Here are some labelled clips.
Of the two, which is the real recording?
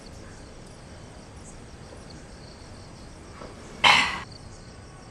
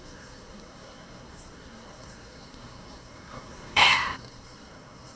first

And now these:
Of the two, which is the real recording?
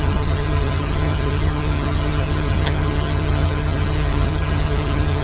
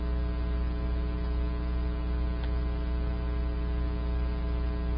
second